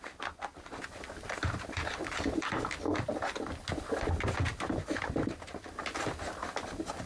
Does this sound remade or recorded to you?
recorded